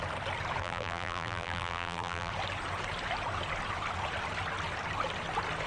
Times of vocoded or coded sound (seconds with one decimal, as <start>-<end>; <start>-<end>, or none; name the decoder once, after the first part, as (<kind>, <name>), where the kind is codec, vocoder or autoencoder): 0.6-2.3 (vocoder, BigVGAN v2)